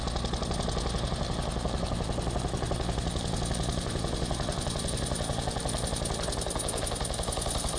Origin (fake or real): real